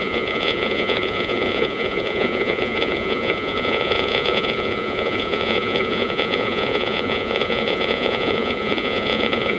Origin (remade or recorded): remade